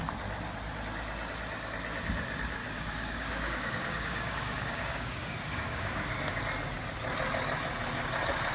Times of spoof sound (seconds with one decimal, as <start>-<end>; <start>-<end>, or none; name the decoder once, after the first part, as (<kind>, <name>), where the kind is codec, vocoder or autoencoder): 2.6-6.4 (codec, DAC)